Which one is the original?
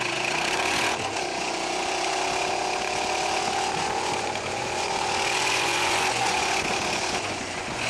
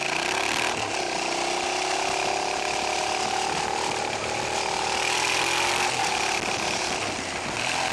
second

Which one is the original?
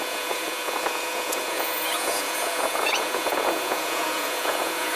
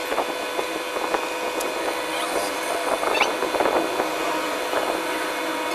second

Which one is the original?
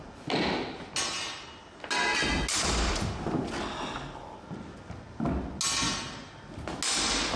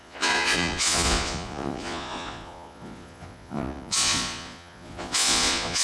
first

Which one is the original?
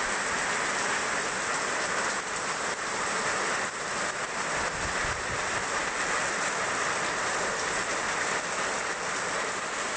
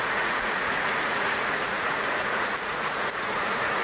first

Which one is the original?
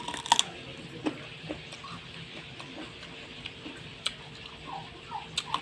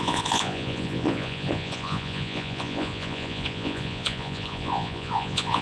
first